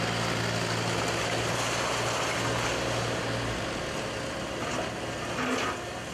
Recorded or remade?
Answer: recorded